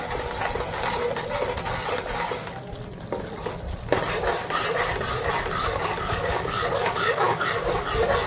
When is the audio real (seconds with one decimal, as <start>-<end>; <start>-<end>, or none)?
0.0-5.6; 7.4-8.3